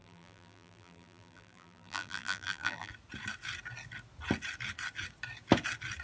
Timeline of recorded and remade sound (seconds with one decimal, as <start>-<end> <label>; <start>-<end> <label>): 0.0-2.9 remade; 2.9-6.0 recorded